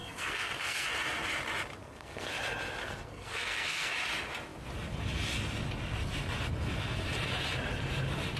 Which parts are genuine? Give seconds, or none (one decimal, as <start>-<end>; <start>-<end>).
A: 0.9-1.8; 2.3-2.8; 3.9-8.4